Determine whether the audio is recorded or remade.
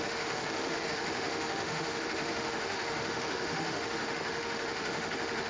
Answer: remade